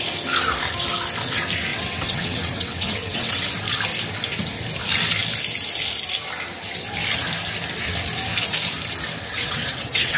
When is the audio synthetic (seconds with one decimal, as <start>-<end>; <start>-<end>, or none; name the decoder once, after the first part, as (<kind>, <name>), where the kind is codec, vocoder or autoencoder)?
1.7-3.5 (vocoder, WaveNeXt); 9.3-10.2